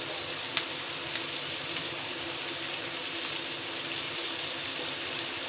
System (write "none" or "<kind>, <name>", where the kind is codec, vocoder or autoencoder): none